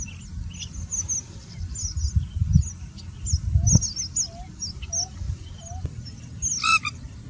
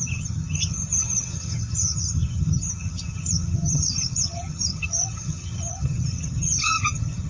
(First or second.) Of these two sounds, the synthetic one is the second